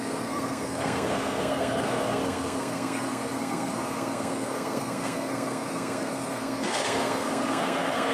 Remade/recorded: remade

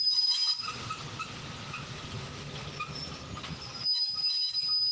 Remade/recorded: recorded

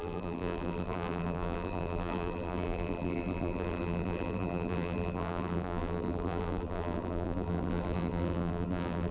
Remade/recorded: remade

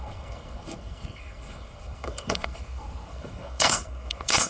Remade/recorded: remade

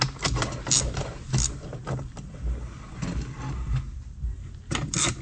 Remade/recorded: recorded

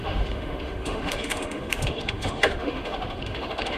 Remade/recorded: remade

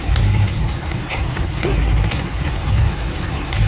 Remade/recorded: remade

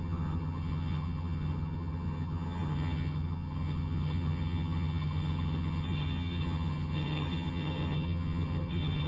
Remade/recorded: remade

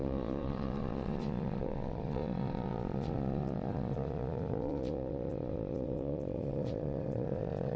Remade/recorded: remade